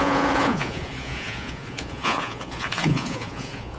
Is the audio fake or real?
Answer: fake